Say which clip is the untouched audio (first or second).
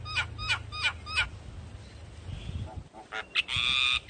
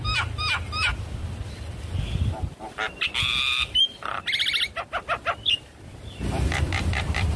first